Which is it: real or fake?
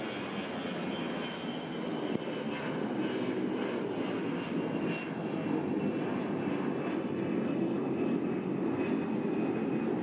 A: real